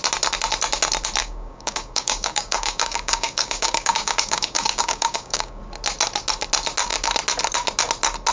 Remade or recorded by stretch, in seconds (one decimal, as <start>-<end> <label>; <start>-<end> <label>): 0.0-1.2 recorded; 1.2-5.6 remade; 5.6-8.3 recorded